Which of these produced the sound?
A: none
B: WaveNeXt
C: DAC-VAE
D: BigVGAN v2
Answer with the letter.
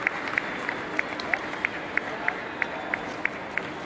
A